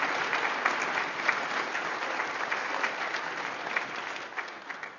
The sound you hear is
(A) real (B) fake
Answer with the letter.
A